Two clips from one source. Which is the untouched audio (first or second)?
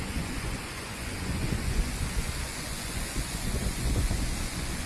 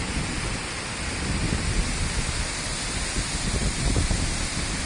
second